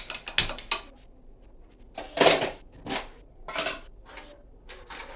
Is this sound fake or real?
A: real